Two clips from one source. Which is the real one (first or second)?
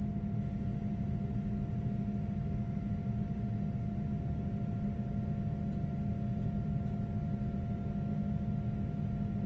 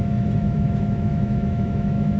first